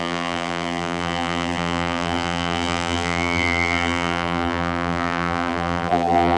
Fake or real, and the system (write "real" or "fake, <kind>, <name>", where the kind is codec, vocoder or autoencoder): fake, vocoder, BigVGAN v2